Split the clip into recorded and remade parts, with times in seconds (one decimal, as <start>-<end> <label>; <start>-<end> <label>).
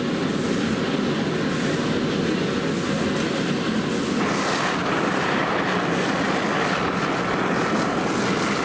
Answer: 0.0-4.8 recorded; 4.8-5.4 remade; 5.4-8.6 recorded